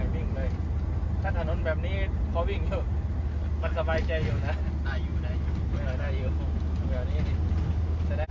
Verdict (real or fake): real